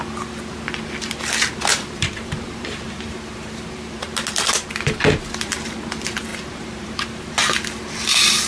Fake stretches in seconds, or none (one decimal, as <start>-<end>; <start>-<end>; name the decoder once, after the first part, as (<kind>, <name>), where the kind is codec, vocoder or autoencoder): 1.7-4.1 (vocoder, BigVGAN v2); 6.3-7.3